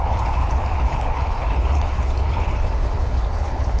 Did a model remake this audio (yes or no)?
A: yes